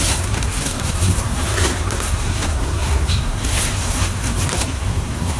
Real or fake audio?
fake